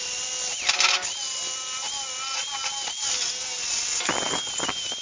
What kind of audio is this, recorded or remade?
recorded